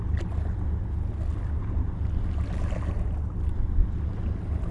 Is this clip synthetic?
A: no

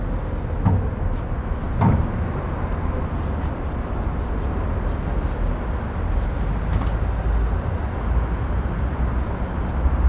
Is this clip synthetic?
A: no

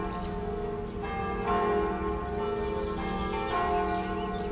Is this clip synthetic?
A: no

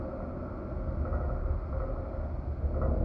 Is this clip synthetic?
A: no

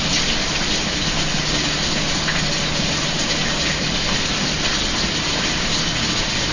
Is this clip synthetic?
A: no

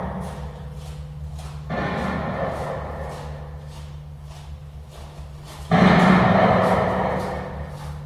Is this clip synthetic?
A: no